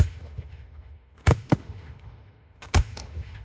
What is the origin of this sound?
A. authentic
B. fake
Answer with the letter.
B